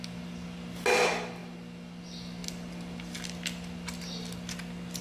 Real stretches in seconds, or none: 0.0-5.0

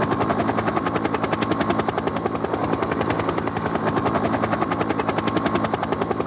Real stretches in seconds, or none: 0.0-6.3

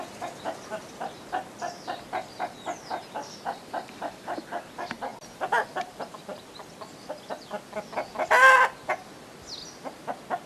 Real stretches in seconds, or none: 0.0-10.5

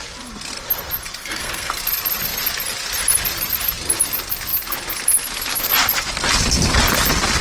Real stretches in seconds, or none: 0.0-1.2; 1.8-7.4

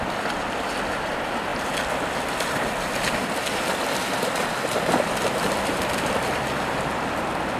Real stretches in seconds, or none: 0.0-7.6

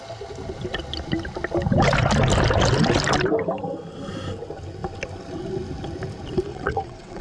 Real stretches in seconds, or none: 0.0-6.5

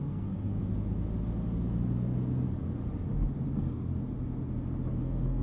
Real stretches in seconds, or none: 0.6-3.5; 3.9-5.0

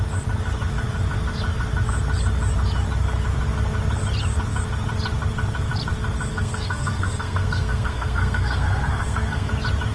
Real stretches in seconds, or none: 0.0-6.3; 9.5-9.9